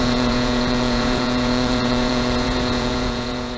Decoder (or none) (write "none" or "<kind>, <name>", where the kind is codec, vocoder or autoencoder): vocoder, Vocos